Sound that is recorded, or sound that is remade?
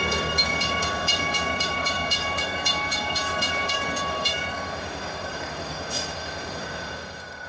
remade